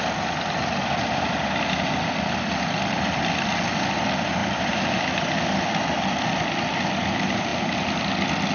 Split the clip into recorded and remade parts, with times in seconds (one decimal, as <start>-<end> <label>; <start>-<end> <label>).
0.0-8.5 recorded